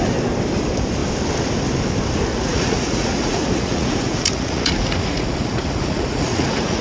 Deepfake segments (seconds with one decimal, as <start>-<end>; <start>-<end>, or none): 2.3-6.8

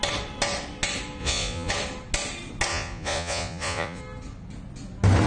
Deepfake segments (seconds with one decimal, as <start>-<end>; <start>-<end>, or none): 1.2-1.7; 2.7-4.0